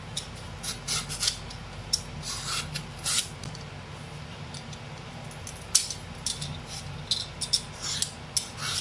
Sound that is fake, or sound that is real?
real